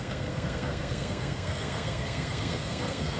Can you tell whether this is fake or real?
fake